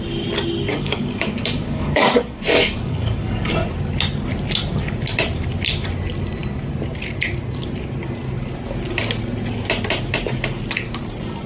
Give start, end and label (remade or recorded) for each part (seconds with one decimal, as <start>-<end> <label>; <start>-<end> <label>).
0.0-0.7 recorded; 0.7-3.5 remade; 3.5-11.5 recorded